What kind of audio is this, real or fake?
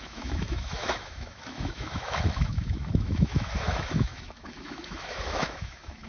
fake